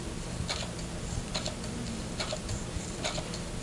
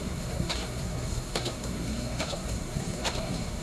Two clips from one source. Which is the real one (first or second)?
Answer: first